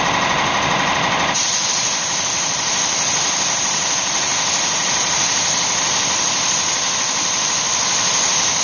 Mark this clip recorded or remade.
recorded